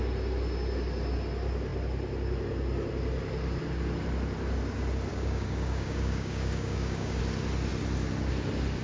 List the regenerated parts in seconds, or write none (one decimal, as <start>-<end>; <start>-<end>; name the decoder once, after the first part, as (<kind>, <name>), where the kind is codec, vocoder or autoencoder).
5.1-7.2 (codec, DAC)